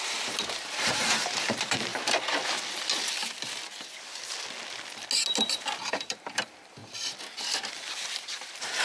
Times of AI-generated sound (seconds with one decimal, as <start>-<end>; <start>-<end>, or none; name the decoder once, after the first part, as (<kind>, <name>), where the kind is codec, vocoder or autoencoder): 0.0-1.9 (vocoder, BigVGAN v2); 5.9-6.8; 7.7-8.8